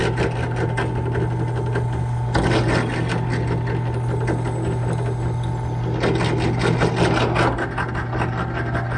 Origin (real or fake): real